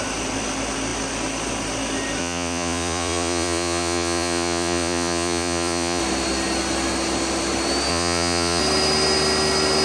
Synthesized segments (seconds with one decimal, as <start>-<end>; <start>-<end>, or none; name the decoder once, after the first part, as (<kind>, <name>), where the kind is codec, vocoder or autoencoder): 2.2-6.0 (vocoder, Vocos); 7.9-8.6